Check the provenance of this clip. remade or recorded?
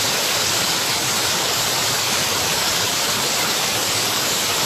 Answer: remade